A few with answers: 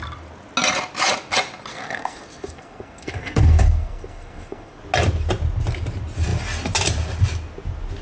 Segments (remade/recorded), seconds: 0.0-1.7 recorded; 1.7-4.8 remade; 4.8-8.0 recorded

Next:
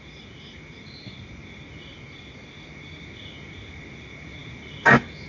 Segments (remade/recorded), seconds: 0.0-5.3 recorded

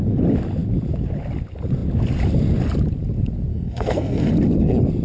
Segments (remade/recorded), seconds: 0.0-3.5 recorded; 3.5-4.3 remade; 4.3-5.0 recorded

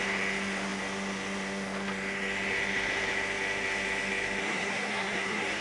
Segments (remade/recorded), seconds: 0.0-4.4 recorded; 4.4-5.6 remade

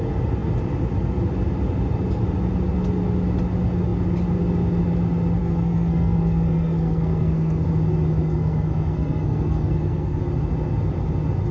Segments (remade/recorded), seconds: 0.0-5.4 recorded; 5.4-7.7 remade; 7.7-8.2 recorded; 8.2-10.2 remade; 10.2-11.5 recorded